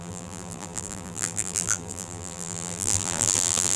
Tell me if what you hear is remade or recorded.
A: remade